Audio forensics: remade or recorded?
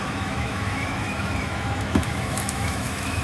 remade